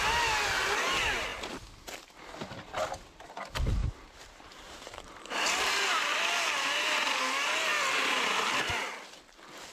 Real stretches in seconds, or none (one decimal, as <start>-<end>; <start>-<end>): 0.0-3.8; 6.2-9.7